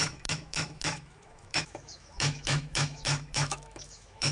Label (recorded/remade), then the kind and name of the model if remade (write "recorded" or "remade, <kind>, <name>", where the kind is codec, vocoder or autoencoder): remade, autoencoder, DAC-VAE